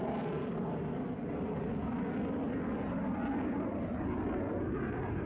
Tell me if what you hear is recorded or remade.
recorded